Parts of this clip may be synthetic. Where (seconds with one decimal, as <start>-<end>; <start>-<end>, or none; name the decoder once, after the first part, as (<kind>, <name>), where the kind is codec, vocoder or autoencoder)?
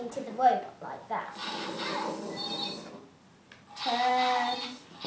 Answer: none